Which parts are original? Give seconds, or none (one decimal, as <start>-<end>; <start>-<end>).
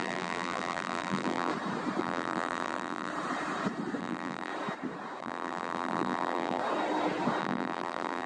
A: 1.5-2.0; 3.1-4.0; 4.5-5.2; 6.6-7.4